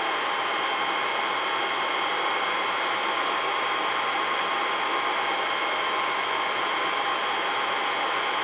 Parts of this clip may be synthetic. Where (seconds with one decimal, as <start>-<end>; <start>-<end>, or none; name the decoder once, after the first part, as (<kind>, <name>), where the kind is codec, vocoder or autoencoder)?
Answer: 2.1-2.9 (vocoder, BigVGAN v2)